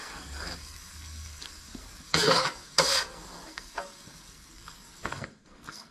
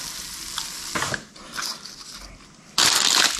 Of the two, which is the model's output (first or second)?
first